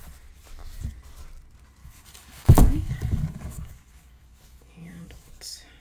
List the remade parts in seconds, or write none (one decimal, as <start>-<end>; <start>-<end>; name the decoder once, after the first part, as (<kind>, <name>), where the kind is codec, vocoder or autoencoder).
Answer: 1.8-5.3 (codec, DAC)